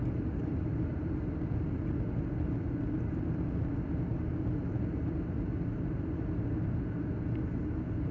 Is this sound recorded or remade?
recorded